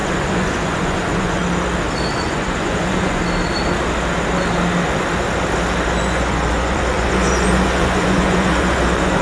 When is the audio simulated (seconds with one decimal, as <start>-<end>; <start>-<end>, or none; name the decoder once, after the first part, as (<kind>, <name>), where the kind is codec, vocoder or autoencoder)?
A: 0.0-1.4 (vocoder, Vocos); 2.1-3.2; 6.0-9.2